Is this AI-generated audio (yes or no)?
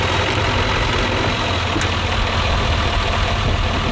no